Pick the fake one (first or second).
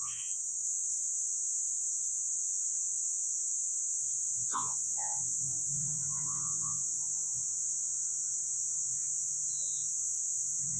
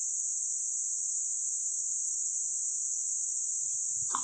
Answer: first